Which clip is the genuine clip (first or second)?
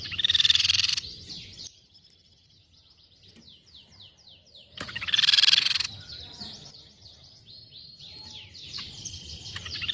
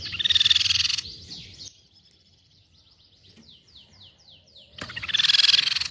second